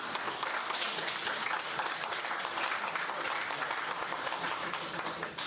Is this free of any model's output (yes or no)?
no